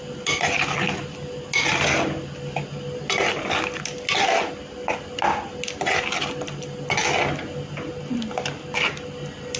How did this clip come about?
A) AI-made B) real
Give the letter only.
B